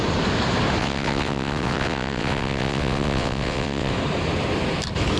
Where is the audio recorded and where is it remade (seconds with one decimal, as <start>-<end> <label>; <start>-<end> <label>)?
0.0-0.8 recorded; 0.8-3.9 remade; 3.9-5.2 recorded